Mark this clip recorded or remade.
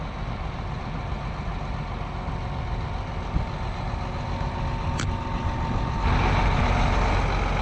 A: recorded